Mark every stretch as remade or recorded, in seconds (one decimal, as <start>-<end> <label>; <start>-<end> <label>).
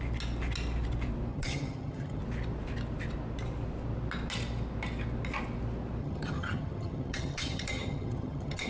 0.0-1.3 recorded; 1.3-2.2 remade; 2.2-6.0 recorded; 6.0-8.7 remade